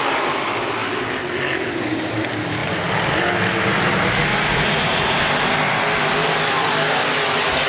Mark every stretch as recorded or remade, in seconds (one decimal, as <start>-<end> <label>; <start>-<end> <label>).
0.0-4.3 recorded; 4.3-5.2 remade; 5.2-7.7 recorded